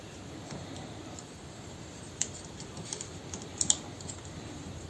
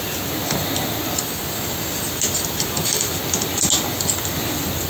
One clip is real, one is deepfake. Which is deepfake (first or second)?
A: first